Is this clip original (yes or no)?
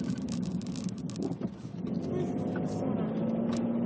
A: yes